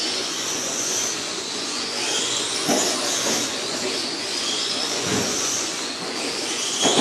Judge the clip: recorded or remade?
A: remade